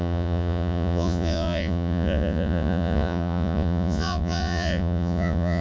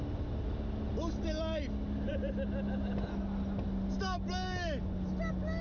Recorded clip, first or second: second